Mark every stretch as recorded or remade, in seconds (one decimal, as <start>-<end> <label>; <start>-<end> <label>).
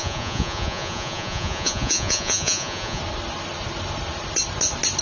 0.0-3.0 remade; 3.0-5.0 recorded